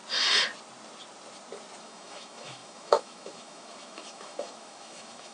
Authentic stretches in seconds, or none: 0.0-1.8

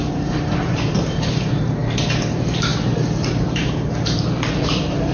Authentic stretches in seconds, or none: 1.8-2.3

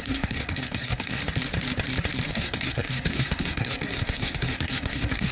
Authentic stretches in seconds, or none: 1.2-2.3

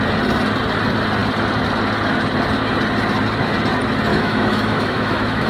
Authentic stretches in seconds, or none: 0.0-4.1